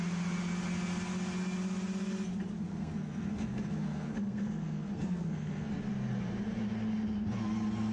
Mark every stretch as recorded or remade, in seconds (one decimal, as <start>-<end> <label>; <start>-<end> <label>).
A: 0.0-2.6 recorded; 2.6-5.7 remade; 5.7-7.9 recorded

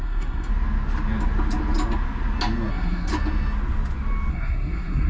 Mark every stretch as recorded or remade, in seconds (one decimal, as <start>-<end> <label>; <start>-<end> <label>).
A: 0.0-0.5 remade; 0.5-2.7 recorded; 2.7-3.1 remade; 3.1-4.3 recorded; 4.3-5.1 remade

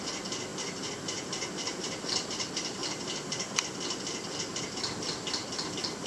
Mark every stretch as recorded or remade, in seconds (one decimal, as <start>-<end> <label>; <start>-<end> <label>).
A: 0.0-6.1 recorded